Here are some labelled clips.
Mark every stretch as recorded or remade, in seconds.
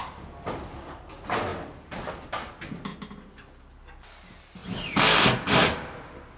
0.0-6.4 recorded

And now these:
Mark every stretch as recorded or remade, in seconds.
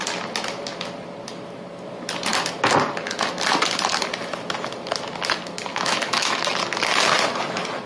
0.0-5.7 recorded; 5.7-6.4 remade; 6.4-7.9 recorded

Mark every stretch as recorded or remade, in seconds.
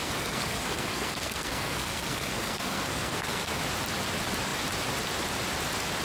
0.0-3.6 remade; 3.6-6.0 recorded